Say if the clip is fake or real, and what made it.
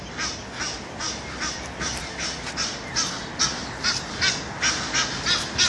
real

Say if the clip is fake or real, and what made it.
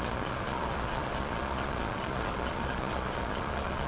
fake, vocoder, Vocos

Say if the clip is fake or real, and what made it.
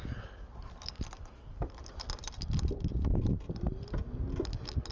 real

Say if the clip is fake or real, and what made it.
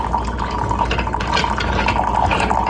real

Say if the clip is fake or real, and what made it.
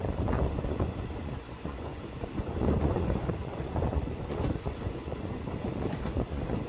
fake, vocoder, Vocos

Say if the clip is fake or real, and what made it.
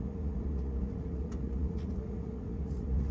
fake, vocoder, Vocos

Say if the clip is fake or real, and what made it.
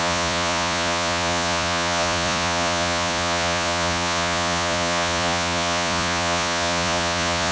fake, vocoder, Vocos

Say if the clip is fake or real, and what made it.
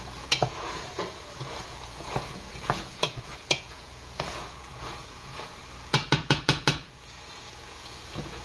fake, vocoder, Vocos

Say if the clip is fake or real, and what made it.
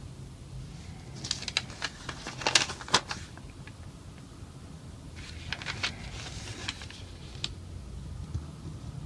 real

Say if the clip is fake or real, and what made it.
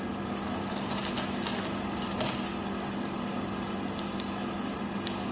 real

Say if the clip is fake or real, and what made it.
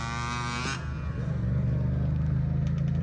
real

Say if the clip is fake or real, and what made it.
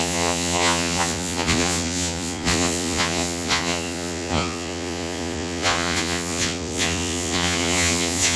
fake, vocoder, Vocos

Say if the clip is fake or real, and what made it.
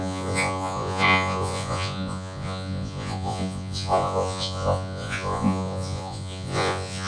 fake, vocoder, Vocos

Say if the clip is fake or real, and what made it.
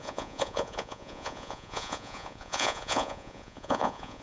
fake, vocoder, Vocos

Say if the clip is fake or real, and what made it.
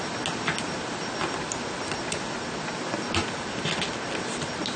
real